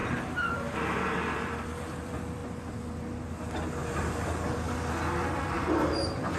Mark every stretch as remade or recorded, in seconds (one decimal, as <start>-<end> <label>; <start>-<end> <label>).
0.0-2.4 remade; 2.4-5.3 recorded; 5.3-6.4 remade